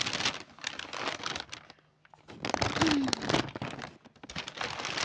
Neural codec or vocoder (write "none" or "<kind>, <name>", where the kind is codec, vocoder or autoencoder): none